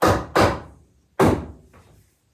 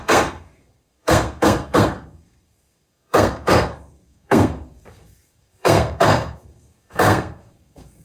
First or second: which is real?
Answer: first